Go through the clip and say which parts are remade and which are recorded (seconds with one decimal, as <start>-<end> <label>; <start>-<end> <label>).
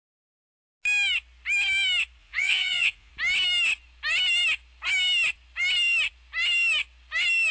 0.0-2.2 recorded; 2.2-3.1 remade; 3.1-7.5 recorded